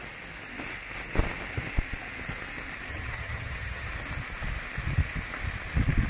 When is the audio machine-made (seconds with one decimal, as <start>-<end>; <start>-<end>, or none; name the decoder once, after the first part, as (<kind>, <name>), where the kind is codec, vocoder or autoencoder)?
2.9-3.9 (vocoder, HiFi-GAN)